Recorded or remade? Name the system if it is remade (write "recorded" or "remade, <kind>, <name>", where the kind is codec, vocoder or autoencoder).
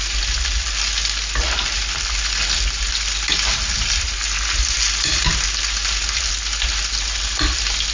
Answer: recorded